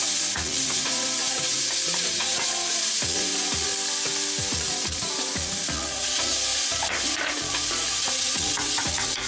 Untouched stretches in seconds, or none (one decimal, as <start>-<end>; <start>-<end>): 3.7-4.5